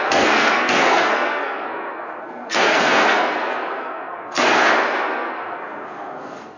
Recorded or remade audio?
remade